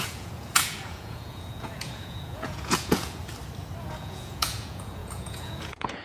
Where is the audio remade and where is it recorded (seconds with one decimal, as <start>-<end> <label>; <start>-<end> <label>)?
0.0-3.2 remade; 3.2-3.8 recorded; 3.8-6.0 remade